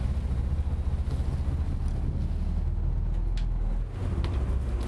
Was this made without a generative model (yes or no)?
yes